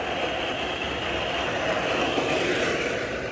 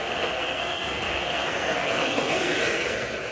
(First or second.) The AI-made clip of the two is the second